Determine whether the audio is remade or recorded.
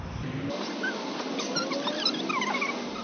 recorded